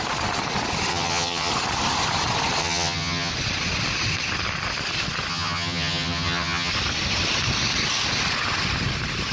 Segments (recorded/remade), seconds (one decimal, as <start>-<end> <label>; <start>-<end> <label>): 0.0-0.9 recorded; 0.9-1.5 remade; 1.5-2.6 recorded; 2.6-3.3 remade; 3.3-5.3 recorded; 5.3-6.7 remade; 6.7-9.3 recorded

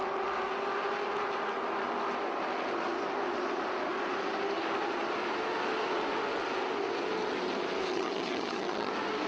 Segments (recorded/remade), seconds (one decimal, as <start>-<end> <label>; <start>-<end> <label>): 0.0-7.9 recorded; 7.9-8.9 remade; 8.9-9.3 recorded